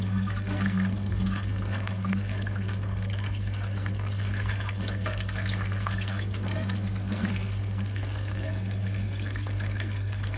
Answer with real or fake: fake